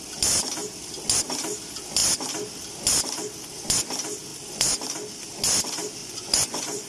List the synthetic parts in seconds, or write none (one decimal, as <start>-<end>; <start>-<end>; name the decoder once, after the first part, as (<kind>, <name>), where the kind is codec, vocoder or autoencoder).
6.0-6.9 (vocoder, Vocos)